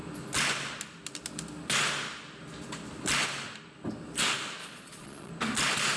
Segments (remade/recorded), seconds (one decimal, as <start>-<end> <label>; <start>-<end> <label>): 0.0-4.6 recorded; 4.6-5.3 remade; 5.3-6.0 recorded